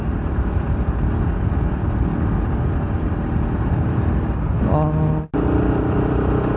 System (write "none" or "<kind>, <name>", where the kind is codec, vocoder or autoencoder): none